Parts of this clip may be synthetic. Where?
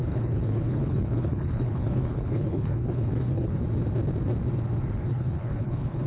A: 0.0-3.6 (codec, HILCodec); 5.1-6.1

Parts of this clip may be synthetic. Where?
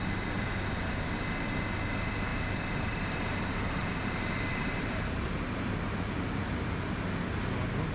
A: 2.3-7.0 (vocoder, BigVGAN v2)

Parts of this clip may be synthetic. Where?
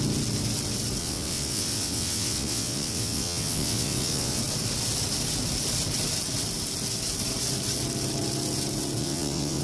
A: 1.0-4.4 (vocoder, WaveNeXt); 9.0-9.6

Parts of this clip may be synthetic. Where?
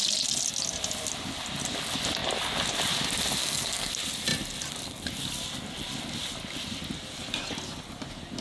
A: 3.4-3.9 (codec, SNAC)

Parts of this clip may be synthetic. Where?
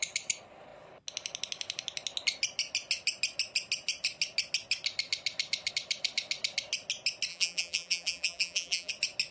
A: 7.3-8.9 (vocoder, BigVGAN v2)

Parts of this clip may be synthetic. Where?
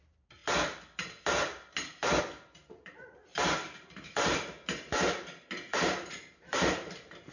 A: 0.0-0.4 (vocoder, BigVGAN v2); 2.2-7.3